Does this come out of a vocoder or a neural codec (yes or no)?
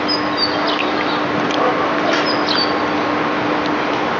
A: no